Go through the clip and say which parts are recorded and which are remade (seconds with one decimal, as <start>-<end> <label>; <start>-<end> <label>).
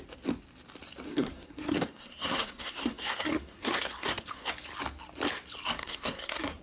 0.0-1.1 recorded; 1.1-4.5 remade; 4.5-5.8 recorded; 5.8-6.6 remade